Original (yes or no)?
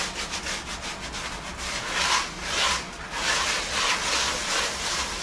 yes